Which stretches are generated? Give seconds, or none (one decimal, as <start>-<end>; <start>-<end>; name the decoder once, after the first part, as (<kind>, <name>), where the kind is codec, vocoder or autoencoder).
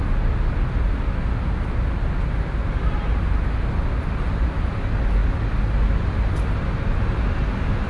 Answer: none